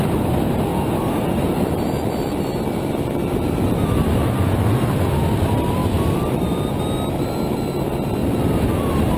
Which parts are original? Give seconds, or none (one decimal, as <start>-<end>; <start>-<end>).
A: 0.0-0.7; 5.1-5.8; 6.7-8.2